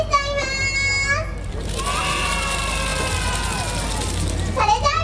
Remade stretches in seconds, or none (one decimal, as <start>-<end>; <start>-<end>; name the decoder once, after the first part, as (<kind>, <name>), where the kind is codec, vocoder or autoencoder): none